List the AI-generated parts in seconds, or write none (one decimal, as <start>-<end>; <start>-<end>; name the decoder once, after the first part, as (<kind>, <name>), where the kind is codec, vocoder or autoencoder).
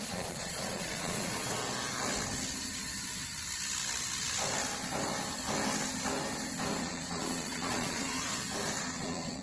0.0-1.6 (vocoder, Vocos); 6.8-8.3; 8.8-9.4